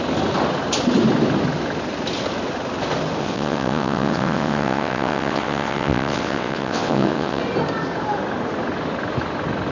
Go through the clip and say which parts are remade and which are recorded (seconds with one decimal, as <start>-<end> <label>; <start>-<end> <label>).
0.0-3.2 recorded; 3.2-7.4 remade; 7.4-9.7 recorded